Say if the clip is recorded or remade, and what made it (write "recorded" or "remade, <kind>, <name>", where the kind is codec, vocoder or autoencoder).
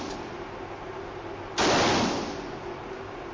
recorded